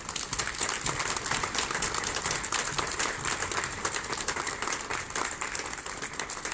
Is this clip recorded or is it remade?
recorded